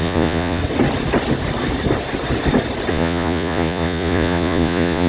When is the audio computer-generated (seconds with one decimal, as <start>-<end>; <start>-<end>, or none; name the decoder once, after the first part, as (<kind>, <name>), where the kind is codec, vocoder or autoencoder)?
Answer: 0.0-0.6 (vocoder, Vocos); 2.9-5.1